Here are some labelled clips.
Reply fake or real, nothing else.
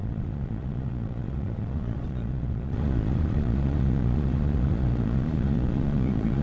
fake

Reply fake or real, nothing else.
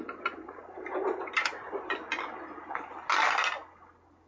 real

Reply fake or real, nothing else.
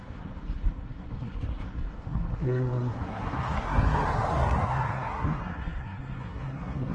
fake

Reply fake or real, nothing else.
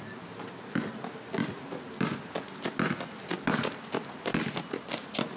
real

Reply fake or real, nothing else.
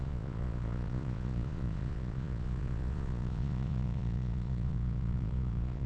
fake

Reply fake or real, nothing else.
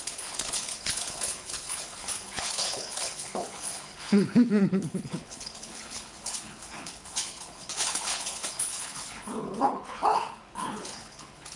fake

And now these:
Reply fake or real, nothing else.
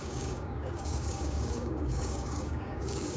fake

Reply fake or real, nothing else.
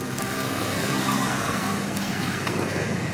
fake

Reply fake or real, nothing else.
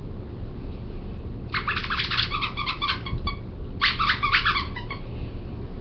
real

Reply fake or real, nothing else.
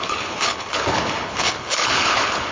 fake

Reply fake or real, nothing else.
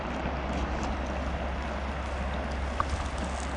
real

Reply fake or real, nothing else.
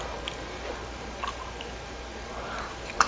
fake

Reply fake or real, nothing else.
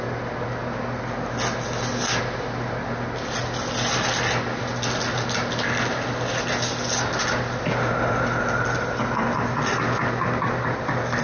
real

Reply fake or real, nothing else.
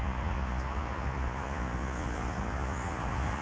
fake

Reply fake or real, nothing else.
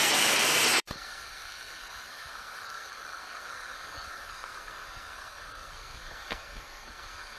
fake